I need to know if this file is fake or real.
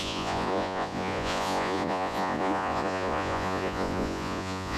fake